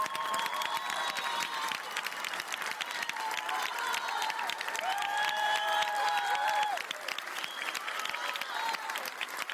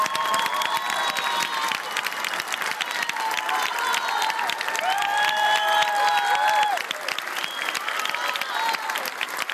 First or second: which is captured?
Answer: second